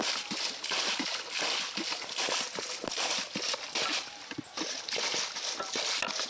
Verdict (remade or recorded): recorded